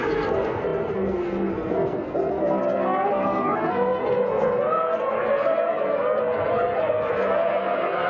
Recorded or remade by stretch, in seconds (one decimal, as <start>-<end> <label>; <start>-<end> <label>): 0.0-8.1 remade